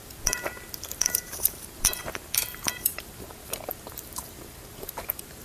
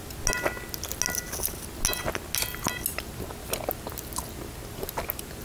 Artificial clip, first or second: first